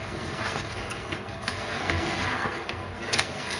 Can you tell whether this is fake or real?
fake